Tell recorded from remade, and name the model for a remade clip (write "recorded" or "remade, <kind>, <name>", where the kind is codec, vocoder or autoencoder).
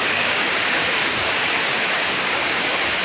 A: remade, codec, DAC